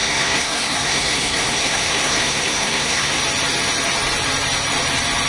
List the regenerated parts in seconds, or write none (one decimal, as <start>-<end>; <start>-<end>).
0.0-3.2